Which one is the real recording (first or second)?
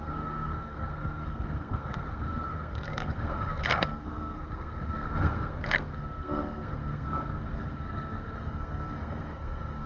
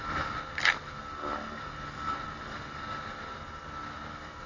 second